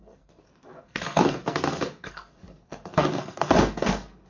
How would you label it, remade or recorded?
remade